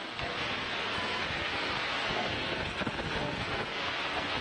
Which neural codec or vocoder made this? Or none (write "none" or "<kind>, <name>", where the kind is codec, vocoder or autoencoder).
codec, SNAC